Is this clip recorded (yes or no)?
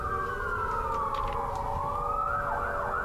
yes